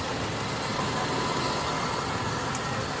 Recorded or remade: recorded